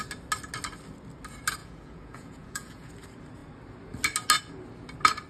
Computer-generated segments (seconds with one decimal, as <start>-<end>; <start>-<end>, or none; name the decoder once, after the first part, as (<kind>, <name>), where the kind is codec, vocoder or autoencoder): 1.6-2.9 (vocoder, Vocos)